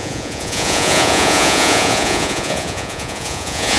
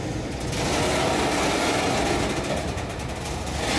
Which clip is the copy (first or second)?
first